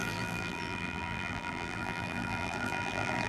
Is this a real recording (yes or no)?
no